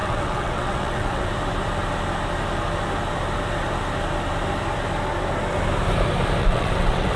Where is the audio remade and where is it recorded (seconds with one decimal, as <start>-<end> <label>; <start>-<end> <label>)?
0.0-1.3 remade; 1.3-6.4 recorded; 6.4-7.2 remade